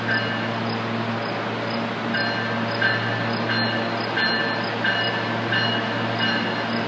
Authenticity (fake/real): real